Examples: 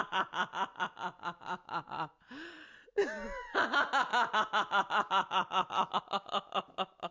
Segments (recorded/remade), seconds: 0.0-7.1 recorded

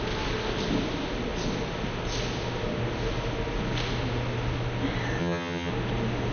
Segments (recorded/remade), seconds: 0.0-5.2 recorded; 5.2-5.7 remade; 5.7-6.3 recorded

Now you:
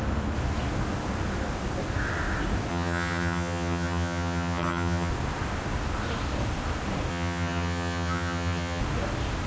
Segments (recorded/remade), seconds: 0.0-2.7 recorded; 2.7-5.1 remade; 5.1-7.1 recorded; 7.1-8.8 remade; 8.8-9.5 recorded

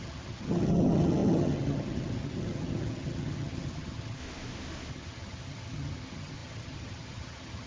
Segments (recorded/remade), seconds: 0.0-4.2 remade; 4.2-4.9 recorded; 4.9-7.7 remade

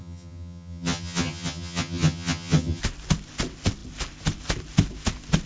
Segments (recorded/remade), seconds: 0.0-2.8 remade; 2.8-5.5 recorded

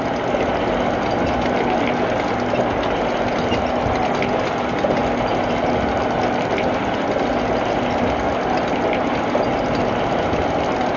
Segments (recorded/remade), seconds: 0.0-11.0 recorded